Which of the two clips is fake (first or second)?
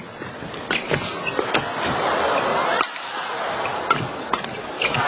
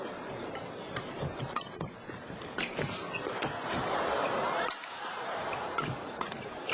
second